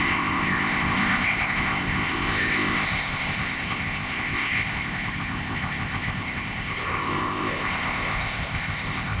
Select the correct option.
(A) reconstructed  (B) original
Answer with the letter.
A